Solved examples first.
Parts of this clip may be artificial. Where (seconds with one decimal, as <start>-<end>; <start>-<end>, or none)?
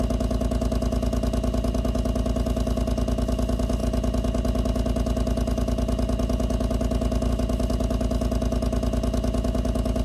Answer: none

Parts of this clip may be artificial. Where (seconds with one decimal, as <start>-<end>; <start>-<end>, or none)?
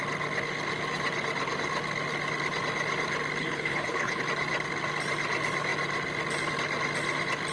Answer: 3.4-4.2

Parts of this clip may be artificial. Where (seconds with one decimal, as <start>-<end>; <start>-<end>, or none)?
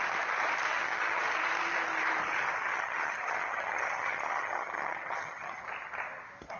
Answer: 0.7-1.2; 2.7-5.6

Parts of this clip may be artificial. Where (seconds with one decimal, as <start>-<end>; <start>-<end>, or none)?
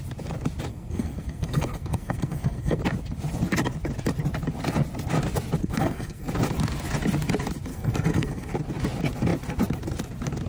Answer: 0.7-2.8; 5.6-6.3; 7.7-8.5